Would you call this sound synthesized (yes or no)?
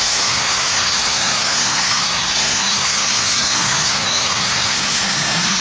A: yes